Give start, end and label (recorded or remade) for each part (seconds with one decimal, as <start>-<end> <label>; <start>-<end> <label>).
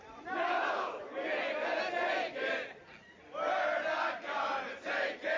0.0-1.0 remade; 1.0-4.1 recorded; 4.1-5.4 remade